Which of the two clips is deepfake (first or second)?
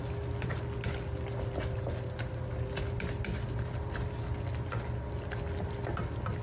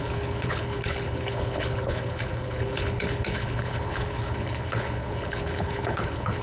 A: second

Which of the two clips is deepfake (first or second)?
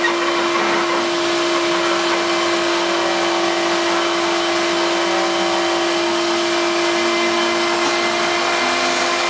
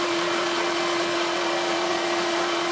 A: second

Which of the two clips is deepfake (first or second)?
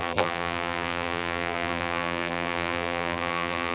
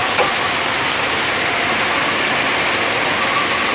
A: first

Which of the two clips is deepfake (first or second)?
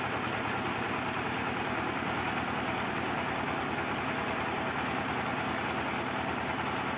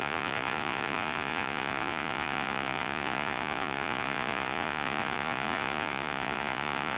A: second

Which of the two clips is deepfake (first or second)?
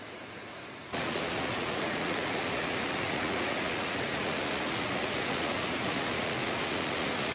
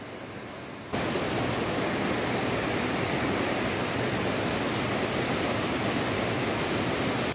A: first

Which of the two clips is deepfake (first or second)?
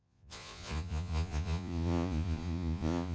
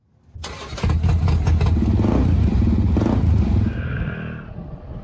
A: first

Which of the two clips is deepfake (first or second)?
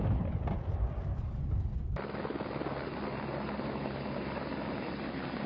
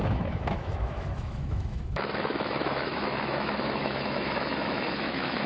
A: second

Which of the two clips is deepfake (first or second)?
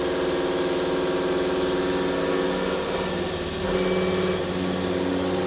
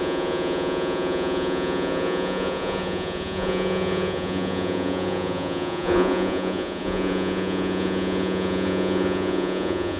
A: second